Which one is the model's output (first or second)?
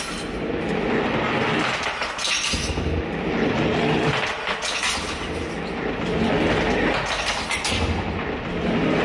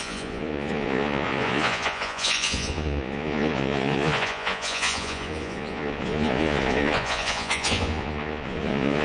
second